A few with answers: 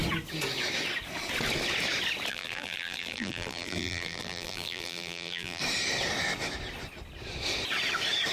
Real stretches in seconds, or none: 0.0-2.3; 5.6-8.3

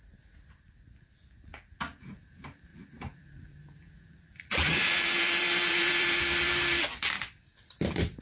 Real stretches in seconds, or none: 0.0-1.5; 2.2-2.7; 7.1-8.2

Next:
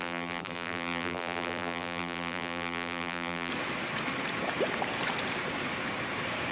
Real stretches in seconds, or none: 3.5-6.5

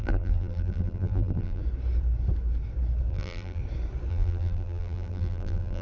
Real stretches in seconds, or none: 1.6-3.1; 3.6-4.1

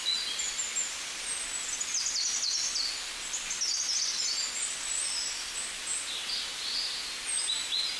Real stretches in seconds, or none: 0.0-8.0